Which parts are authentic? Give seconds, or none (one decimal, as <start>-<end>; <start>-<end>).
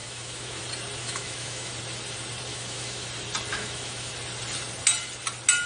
0.6-1.0; 1.7-2.5; 3.1-3.5; 4.1-5.7